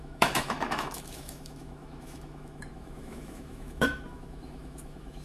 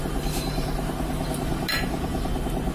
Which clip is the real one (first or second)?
second